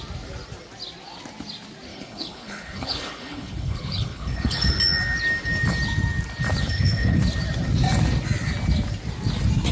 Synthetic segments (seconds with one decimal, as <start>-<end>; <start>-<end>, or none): 1.9-4.7; 6.6-7.2